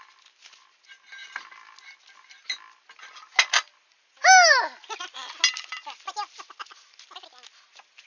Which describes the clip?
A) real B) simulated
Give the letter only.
A